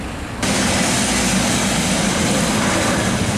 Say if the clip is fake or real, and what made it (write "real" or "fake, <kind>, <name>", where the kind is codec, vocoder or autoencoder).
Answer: real